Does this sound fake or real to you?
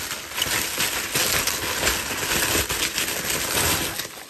real